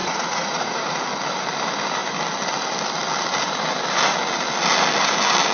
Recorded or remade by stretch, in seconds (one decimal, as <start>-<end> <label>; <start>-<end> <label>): 0.0-1.0 remade; 1.0-5.5 recorded